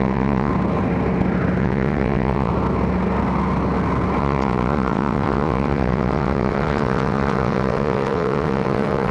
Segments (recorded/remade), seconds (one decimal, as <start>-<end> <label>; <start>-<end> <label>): 0.0-0.5 remade; 0.5-1.6 recorded; 1.6-2.5 remade; 2.5-4.2 recorded; 4.2-9.1 remade